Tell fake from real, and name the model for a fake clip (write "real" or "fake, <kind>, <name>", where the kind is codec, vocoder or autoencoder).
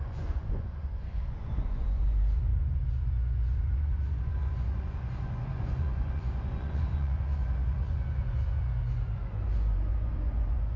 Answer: fake, vocoder, Vocos